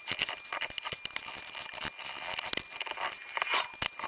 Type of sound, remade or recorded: recorded